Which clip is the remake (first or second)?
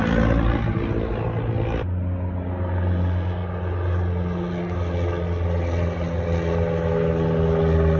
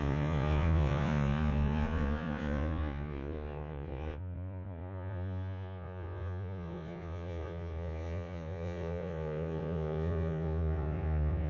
second